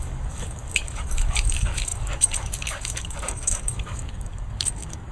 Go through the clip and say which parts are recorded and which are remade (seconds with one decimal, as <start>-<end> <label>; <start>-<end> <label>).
0.0-5.1 remade

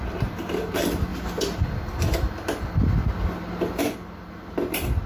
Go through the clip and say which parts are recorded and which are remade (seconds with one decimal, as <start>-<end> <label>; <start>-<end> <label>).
0.0-5.1 recorded

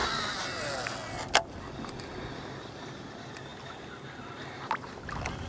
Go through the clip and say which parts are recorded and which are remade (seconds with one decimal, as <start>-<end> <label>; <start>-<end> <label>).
0.0-5.5 recorded